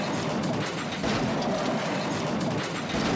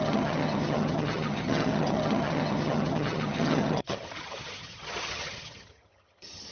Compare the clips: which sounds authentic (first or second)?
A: first